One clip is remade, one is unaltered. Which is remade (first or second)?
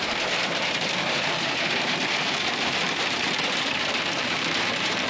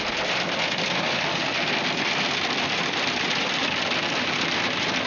first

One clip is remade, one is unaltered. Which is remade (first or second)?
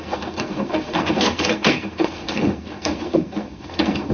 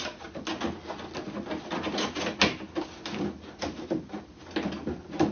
first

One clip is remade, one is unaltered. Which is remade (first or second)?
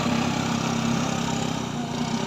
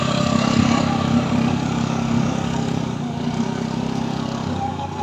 second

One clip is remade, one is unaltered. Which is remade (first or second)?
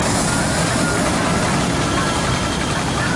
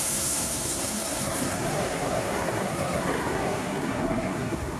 second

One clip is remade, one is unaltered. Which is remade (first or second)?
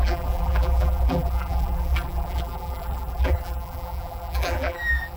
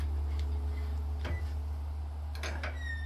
first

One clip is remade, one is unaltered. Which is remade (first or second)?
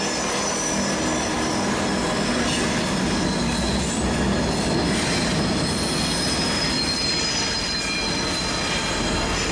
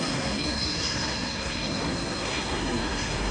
second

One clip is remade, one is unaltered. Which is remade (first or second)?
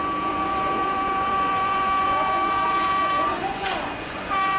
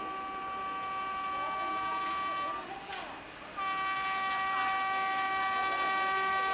first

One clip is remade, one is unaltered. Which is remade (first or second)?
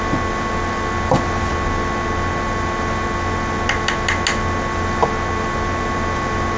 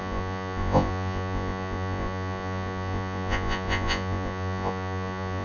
second